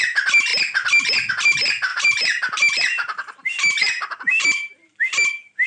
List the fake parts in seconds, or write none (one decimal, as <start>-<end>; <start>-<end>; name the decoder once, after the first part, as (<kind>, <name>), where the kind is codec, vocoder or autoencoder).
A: 1.9-5.3 (vocoder, BigVGAN v2)